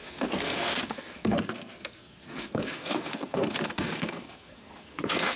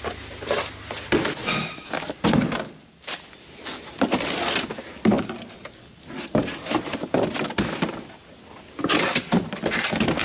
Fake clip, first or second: first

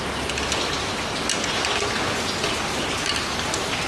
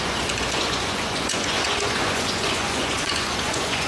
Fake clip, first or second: second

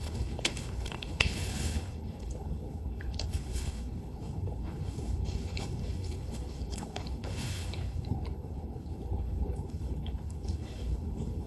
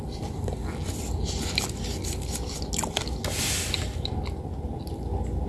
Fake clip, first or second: first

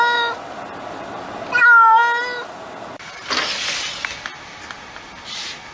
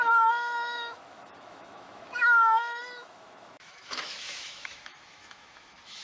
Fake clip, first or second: second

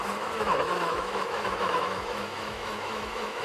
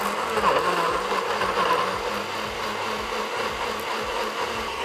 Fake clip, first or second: first